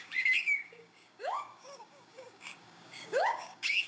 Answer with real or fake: fake